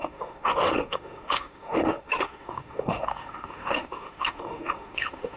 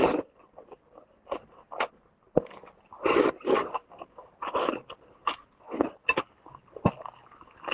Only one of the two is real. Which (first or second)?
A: second